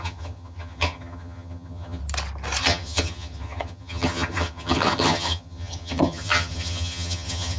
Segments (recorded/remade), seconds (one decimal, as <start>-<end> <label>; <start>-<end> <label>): 0.0-2.0 remade; 2.0-2.6 recorded; 2.6-7.6 remade